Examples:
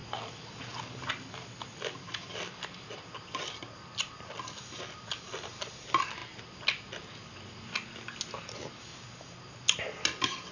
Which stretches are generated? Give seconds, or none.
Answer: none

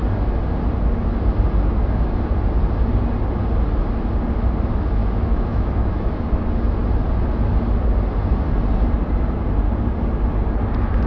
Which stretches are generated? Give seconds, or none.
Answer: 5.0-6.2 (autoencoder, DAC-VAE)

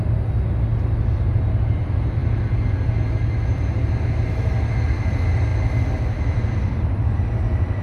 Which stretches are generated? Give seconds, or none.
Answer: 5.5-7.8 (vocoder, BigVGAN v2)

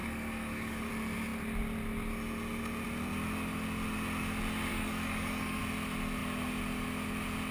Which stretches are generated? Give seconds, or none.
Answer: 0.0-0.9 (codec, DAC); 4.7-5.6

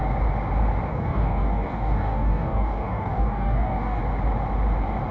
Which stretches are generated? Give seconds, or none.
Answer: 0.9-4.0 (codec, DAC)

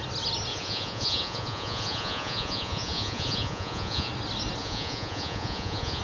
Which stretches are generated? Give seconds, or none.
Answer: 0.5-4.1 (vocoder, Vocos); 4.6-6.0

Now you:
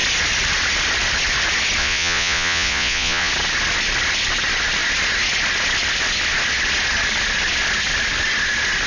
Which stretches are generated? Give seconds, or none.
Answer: 1.8-3.3 (vocoder, Vocos)

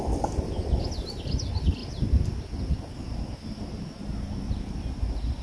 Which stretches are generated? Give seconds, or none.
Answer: none